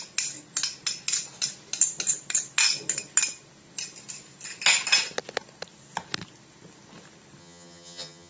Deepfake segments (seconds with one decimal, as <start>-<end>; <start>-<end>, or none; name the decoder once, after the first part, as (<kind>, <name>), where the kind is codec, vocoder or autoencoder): 7.4-8.3 (vocoder, HiFi-GAN)